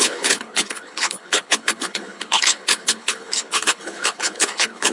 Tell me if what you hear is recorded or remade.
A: remade